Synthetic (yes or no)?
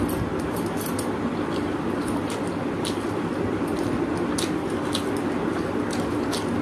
no